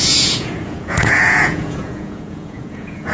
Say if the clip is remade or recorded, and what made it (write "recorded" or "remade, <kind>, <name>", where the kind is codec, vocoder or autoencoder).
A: remade, vocoder, Vocos